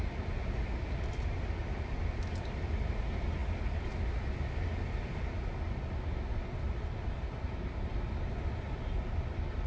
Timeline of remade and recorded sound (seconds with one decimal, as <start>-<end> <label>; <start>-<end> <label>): 0.0-9.7 recorded